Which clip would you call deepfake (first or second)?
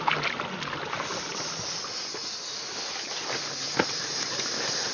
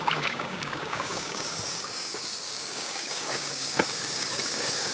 second